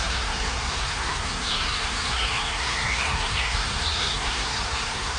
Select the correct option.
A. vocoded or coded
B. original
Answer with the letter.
A